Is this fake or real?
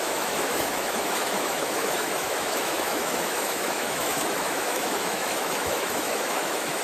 fake